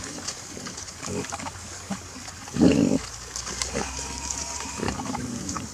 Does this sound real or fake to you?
fake